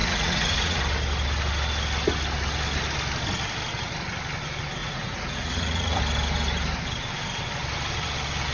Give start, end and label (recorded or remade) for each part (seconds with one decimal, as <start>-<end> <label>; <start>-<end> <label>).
0.0-0.8 remade; 0.8-4.8 recorded; 4.8-6.0 remade; 6.0-8.5 recorded